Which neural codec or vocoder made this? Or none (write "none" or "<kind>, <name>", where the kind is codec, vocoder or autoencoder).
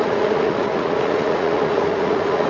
vocoder, Vocos